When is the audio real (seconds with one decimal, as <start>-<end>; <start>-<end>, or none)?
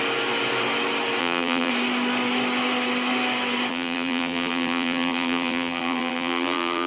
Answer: 0.0-1.2; 1.7-3.7